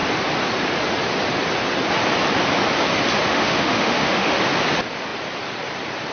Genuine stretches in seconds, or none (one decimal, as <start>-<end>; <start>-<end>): 0.0-3.3; 4.4-6.1